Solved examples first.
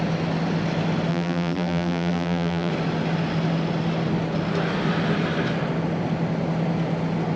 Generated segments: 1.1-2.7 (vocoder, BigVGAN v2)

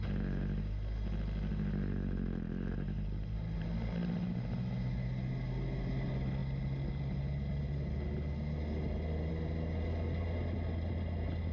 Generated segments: none

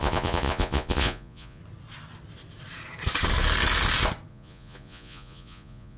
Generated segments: 0.0-1.6 (vocoder, Vocos); 4.3-6.0

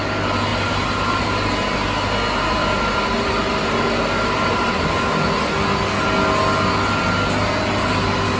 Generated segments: 0.5-1.5 (vocoder, BigVGAN v2); 2.6-4.9

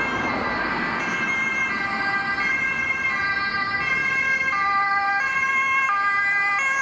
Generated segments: none

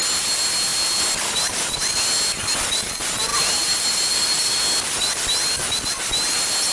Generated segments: 3.3-4.5 (vocoder, BigVGAN v2)